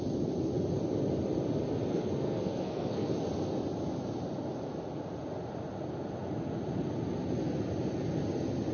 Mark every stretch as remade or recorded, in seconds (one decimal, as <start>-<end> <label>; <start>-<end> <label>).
0.0-1.9 recorded; 1.9-3.1 remade; 3.1-8.7 recorded